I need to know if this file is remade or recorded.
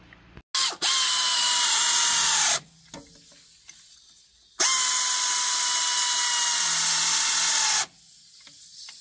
recorded